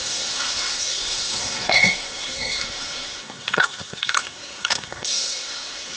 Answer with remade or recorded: remade